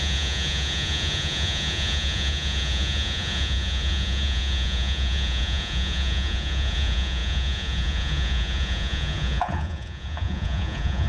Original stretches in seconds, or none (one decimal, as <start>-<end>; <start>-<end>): none